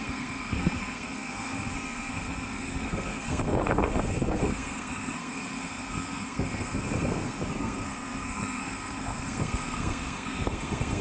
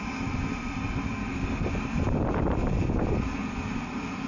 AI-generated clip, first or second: first